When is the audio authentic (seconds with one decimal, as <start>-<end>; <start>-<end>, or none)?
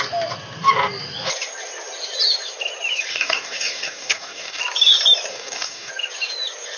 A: 0.0-3.1; 4.6-5.3; 5.9-6.8